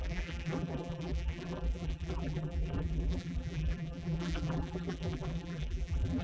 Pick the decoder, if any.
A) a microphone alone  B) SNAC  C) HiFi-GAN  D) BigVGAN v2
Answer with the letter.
D